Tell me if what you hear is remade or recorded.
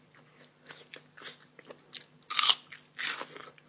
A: recorded